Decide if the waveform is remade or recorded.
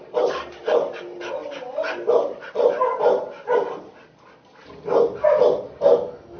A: recorded